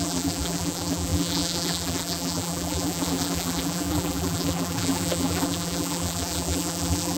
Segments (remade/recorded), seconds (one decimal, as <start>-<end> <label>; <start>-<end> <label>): 0.0-7.2 remade

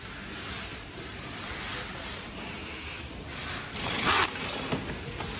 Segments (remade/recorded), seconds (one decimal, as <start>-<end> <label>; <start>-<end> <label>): 0.0-0.7 recorded; 0.7-3.9 remade; 3.9-5.4 recorded